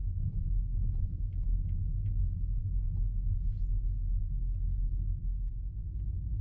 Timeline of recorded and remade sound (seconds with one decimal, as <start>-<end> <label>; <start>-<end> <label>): 0.0-6.4 recorded